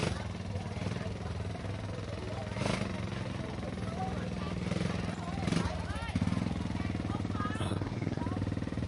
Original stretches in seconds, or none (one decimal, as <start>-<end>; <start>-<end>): 0.0-7.6; 8.2-8.9